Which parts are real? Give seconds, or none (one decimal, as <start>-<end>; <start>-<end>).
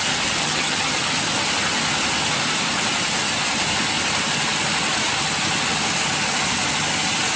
0.0-0.4; 1.1-7.4